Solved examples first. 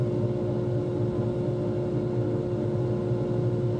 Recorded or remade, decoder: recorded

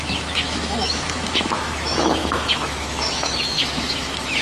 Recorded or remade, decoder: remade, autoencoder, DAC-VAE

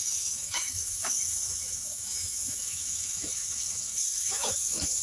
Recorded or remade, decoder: remade, autoencoder, DAC-VAE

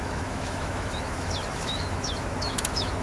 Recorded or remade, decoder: remade, autoencoder, DAC-VAE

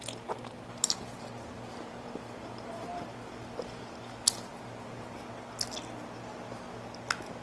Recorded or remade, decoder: recorded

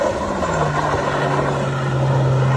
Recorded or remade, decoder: recorded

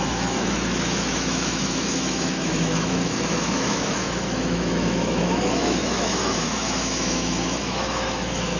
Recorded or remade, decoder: remade, autoencoder, DAC-VAE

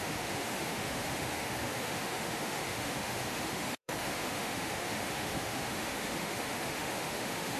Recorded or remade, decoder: remade, autoencoder, DAC-VAE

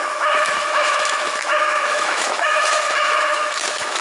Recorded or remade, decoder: remade, autoencoder, DAC-VAE